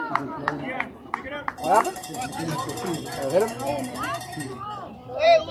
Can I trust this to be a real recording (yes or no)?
no